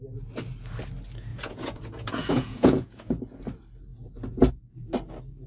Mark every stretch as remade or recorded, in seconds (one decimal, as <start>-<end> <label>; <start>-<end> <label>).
0.0-1.3 recorded; 1.3-3.2 remade; 3.2-5.5 recorded